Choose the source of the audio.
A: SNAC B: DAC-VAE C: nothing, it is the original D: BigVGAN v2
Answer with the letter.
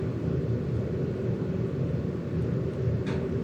C